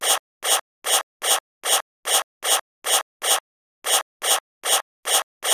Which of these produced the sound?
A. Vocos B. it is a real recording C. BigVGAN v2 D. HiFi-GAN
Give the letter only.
B